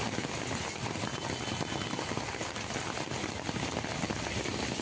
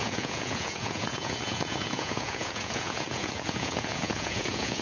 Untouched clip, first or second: first